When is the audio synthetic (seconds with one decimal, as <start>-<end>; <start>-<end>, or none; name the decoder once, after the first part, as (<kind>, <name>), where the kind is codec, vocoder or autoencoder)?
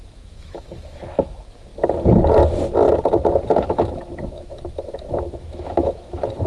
0.0-1.7 (autoencoder, DAC-VAE); 3.5-6.5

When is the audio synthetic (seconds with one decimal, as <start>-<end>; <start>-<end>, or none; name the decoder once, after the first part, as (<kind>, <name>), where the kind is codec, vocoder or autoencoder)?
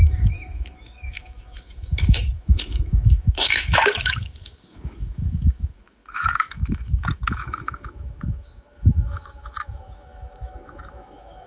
0.0-11.5 (autoencoder, DAC-VAE)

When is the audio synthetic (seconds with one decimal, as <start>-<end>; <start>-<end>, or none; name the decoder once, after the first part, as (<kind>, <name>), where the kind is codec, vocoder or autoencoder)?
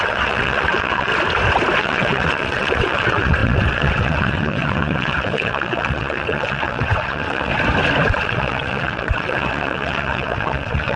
0.0-1.1 (vocoder, WaveNeXt); 1.8-7.5; 8.1-11.0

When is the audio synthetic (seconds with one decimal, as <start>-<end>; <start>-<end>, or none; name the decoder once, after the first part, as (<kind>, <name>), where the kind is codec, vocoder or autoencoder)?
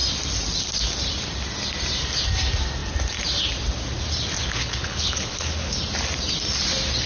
4.4-5.8 (codec, HILCodec)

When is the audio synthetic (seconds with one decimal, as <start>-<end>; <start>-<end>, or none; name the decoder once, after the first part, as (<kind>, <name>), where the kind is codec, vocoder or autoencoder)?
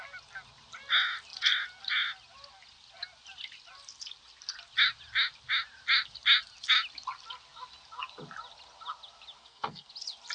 9.4-9.9 (codec, SNAC)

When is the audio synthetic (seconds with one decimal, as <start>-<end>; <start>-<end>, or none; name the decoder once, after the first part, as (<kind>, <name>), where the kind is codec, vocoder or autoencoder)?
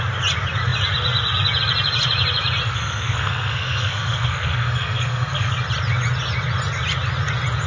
2.7-5.5 (codec, SNAC)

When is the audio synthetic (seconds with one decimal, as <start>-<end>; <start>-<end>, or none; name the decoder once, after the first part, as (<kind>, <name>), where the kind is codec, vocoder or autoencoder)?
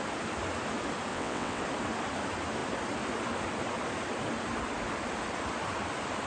1.1-1.6 (vocoder, WaveNeXt)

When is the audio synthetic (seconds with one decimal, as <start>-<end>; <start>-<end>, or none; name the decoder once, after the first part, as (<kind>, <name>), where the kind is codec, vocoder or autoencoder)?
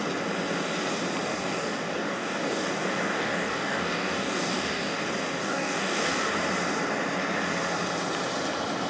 1.3-5.0 (codec, DAC); 5.4-6.3